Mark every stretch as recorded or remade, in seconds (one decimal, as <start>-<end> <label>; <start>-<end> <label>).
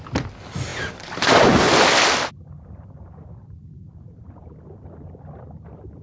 0.0-6.0 remade